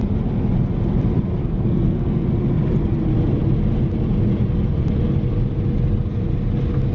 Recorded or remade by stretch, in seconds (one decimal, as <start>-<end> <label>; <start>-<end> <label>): 0.0-1.4 recorded; 1.4-2.3 remade; 2.3-6.9 recorded